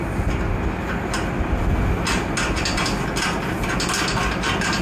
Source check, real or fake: real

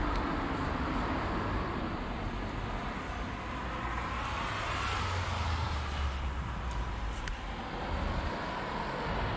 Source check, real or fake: real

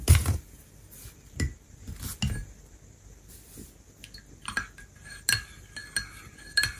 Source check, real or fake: real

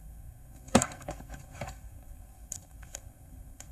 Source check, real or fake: fake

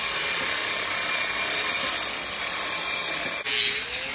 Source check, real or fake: real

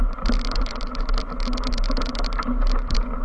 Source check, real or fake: real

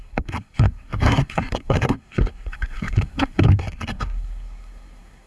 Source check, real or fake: fake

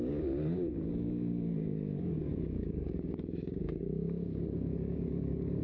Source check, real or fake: fake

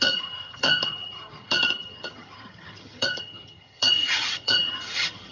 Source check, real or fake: fake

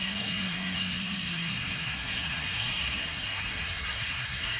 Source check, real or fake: fake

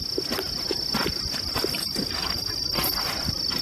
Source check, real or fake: real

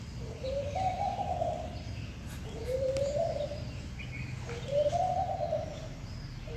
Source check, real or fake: real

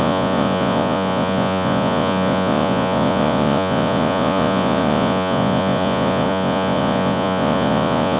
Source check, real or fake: fake